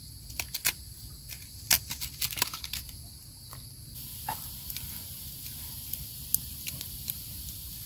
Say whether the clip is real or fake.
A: real